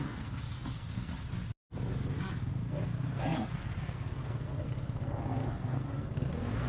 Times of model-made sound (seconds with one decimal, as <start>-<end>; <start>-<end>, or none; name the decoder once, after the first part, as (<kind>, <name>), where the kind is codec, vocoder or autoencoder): 0.0-1.1 (codec, SNAC); 2.1-6.7